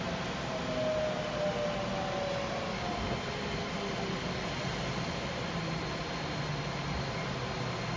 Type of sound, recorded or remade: recorded